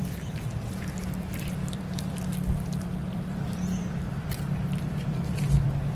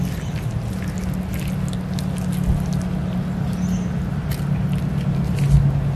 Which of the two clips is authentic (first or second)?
second